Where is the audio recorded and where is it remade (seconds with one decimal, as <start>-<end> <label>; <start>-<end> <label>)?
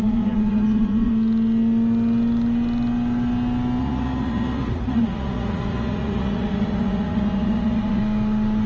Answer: 0.0-1.1 remade; 1.1-3.8 recorded; 3.8-8.0 remade; 8.0-8.7 recorded